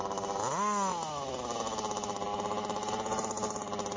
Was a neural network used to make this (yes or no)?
no